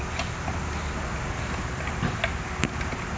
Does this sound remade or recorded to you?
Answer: recorded